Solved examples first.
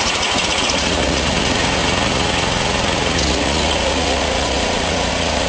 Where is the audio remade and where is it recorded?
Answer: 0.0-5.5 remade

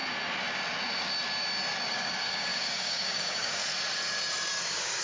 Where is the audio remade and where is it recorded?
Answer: 0.0-1.9 recorded; 1.9-3.6 remade; 3.6-4.6 recorded; 4.6-5.0 remade

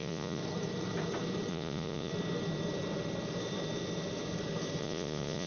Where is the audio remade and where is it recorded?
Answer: 0.0-0.4 remade; 0.4-1.5 recorded; 1.5-2.1 remade; 2.1-4.8 recorded; 4.8-5.5 remade

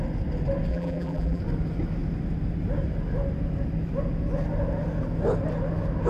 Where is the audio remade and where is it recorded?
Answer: 0.0-0.7 recorded; 0.7-1.4 remade; 1.4-6.1 recorded

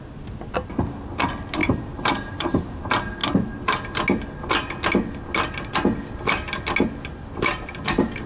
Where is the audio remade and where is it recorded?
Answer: 0.0-1.6 recorded; 1.6-2.8 remade; 2.8-8.3 recorded